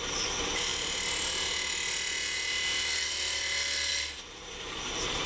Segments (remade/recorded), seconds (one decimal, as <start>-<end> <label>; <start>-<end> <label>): 0.0-5.3 recorded